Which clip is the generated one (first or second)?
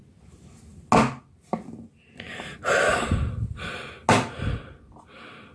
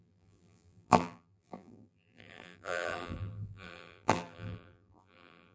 second